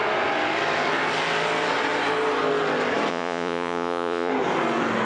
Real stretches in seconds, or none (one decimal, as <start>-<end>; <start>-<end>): 0.0-3.1; 4.3-5.0